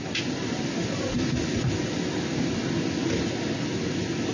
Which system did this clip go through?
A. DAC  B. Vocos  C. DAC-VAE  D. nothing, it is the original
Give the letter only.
D